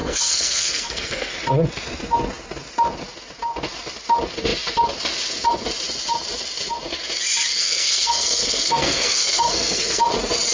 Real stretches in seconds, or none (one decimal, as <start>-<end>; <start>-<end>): 1.3-7.5; 10.0-10.5